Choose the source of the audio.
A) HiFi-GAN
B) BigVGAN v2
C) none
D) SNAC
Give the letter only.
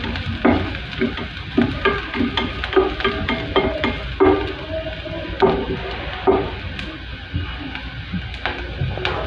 C